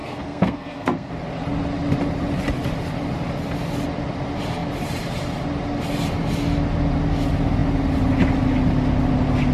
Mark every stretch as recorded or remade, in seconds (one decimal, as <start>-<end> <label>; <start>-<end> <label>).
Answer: 0.0-1.1 remade; 1.1-9.5 recorded

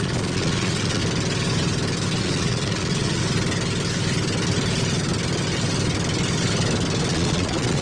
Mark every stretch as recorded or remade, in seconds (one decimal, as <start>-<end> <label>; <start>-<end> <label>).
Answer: 0.0-1.0 remade; 1.0-2.2 recorded; 2.2-3.2 remade; 3.2-7.1 recorded; 7.1-7.8 remade

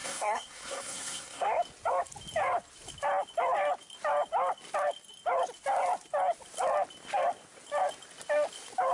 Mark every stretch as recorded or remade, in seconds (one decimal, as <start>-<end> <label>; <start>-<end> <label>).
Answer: 0.0-1.6 remade; 1.6-8.9 recorded

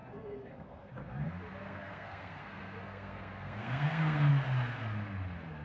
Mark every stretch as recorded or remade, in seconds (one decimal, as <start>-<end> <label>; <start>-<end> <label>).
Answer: 0.0-0.9 remade; 0.9-1.6 recorded; 1.6-4.3 remade; 4.3-5.6 recorded

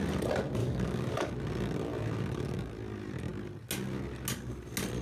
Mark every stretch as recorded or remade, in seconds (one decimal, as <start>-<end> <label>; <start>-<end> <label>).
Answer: 0.0-0.6 recorded; 0.6-1.3 remade; 1.3-5.0 recorded